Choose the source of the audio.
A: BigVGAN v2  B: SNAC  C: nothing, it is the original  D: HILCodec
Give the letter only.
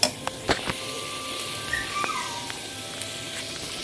A